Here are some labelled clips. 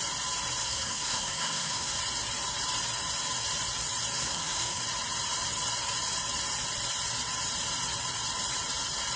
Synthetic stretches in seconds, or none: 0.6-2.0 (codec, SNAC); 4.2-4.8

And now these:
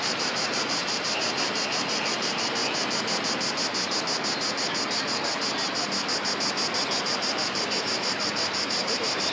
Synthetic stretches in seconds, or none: 0.0-2.6 (vocoder, BigVGAN v2); 7.0-9.3